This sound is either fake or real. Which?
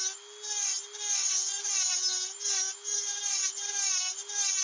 real